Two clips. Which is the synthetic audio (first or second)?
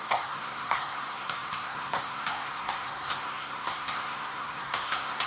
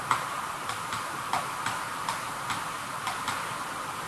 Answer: first